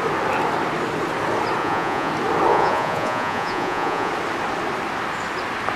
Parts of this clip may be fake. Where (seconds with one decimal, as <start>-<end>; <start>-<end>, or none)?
1.6-2.1; 2.5-4.1